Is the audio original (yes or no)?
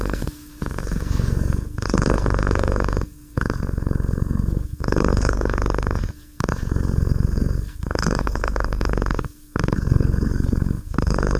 no